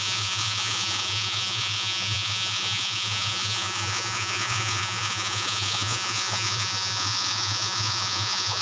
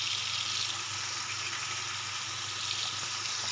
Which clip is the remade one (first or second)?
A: first